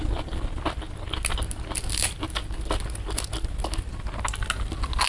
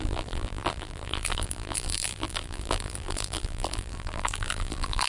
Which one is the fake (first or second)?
second